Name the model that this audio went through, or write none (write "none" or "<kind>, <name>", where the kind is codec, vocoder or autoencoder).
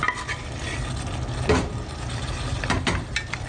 none